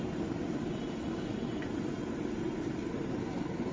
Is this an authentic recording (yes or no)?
yes